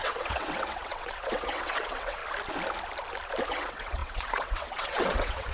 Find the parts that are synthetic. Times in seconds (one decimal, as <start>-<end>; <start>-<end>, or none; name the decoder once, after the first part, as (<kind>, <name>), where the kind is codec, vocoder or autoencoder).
0.0-2.2 (vocoder, WaveNeXt); 3.5-5.5